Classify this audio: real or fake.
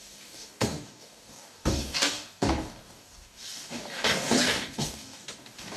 fake